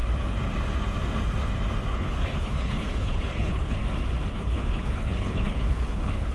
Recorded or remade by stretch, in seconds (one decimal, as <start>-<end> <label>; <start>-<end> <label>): 0.0-1.9 recorded; 1.9-3.8 remade; 3.8-4.3 recorded; 4.3-6.3 remade